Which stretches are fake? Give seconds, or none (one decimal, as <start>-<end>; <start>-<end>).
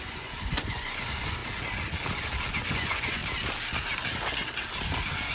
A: 0.0-1.4; 2.5-3.2